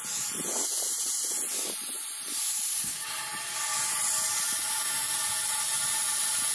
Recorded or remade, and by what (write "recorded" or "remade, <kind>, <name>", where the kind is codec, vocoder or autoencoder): recorded